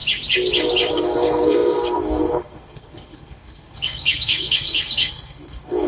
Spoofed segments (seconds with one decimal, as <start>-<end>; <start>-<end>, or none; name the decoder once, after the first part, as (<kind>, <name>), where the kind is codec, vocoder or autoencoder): 0.9-5.9 (codec, SNAC)